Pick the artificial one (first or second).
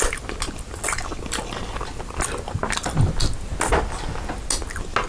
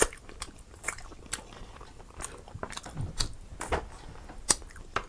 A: second